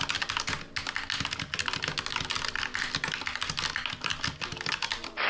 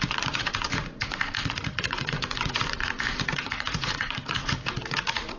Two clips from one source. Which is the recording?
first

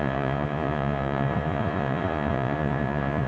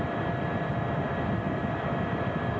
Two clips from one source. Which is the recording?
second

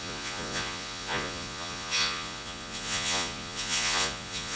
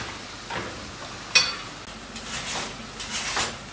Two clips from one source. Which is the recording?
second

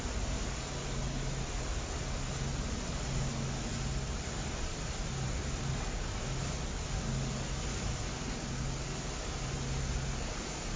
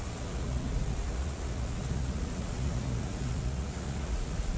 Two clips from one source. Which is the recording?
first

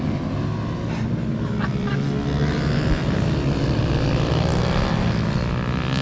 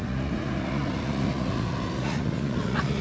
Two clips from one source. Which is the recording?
first